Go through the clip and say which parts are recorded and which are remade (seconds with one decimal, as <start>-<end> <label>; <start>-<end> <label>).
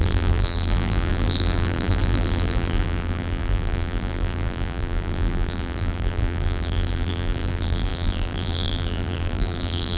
0.0-10.0 remade